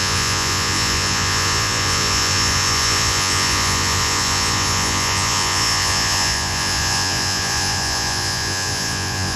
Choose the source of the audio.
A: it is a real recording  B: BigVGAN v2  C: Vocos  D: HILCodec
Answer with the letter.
C